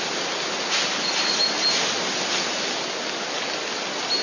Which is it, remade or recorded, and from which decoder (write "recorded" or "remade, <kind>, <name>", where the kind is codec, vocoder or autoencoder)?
recorded